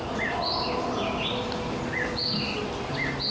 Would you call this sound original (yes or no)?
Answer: yes